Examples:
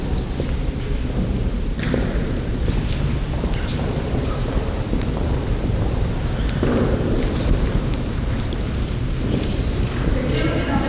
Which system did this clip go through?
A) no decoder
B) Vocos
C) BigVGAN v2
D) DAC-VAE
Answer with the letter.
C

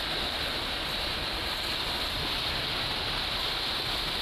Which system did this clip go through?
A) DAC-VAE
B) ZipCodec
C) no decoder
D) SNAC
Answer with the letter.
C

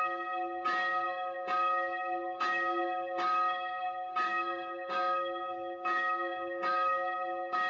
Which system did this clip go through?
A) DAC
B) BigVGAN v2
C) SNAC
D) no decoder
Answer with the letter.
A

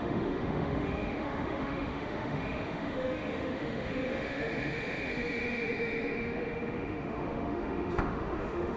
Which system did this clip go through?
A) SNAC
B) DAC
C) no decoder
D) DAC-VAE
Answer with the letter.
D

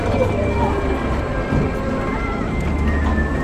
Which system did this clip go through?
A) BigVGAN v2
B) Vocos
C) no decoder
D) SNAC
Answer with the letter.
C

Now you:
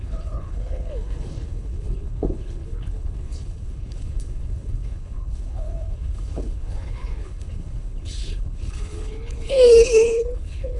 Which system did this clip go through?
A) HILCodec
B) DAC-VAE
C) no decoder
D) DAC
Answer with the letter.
A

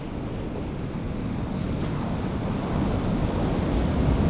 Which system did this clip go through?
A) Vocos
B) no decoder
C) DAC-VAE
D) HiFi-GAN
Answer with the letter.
B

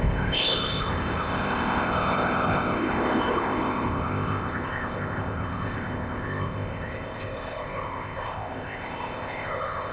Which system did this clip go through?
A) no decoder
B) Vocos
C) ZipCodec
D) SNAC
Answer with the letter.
C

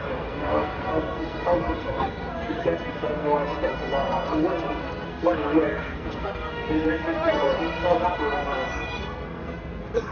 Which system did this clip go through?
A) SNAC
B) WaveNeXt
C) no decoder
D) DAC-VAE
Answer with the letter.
A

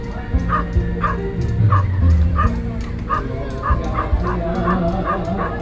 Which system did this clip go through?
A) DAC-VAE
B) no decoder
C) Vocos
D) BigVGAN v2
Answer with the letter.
B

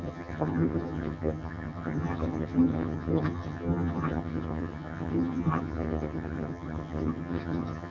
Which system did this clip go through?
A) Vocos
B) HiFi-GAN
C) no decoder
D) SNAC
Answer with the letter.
B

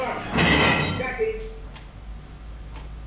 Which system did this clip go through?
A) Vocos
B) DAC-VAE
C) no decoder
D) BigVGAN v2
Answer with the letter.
C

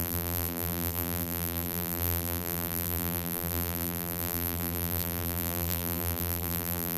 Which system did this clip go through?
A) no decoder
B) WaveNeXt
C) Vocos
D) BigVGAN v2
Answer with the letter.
D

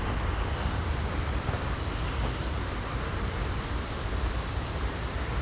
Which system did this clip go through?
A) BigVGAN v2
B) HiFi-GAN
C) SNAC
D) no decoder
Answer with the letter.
A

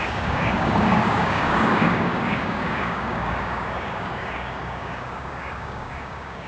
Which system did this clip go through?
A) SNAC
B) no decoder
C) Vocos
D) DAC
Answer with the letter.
D